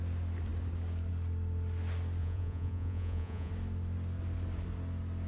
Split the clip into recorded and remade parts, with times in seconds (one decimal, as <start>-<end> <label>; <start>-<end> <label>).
0.0-2.2 recorded; 2.2-3.5 remade; 3.5-5.3 recorded

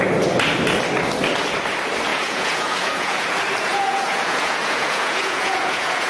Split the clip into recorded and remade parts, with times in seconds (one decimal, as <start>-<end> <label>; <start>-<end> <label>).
0.0-2.1 recorded; 2.1-3.3 remade; 3.3-3.7 recorded; 3.7-6.1 remade

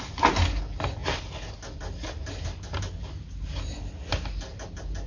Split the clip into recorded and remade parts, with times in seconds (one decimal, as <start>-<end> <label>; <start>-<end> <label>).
0.0-5.1 recorded